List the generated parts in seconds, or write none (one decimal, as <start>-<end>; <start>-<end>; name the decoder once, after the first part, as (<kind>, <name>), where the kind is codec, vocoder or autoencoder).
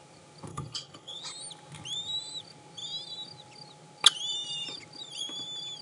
0.5-1.2 (codec, HILCodec)